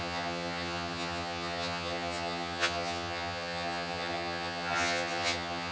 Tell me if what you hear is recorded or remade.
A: remade